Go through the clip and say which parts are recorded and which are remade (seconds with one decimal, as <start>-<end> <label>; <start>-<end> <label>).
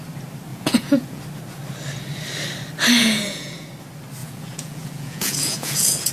0.0-0.5 recorded; 0.5-1.2 remade; 1.2-3.0 recorded; 3.0-3.7 remade; 3.7-4.2 recorded; 4.2-6.1 remade